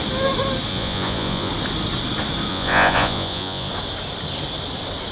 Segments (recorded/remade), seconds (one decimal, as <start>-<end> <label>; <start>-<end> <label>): 0.0-0.7 recorded; 0.7-1.5 remade; 1.5-2.5 recorded; 2.5-3.7 remade; 3.7-5.1 recorded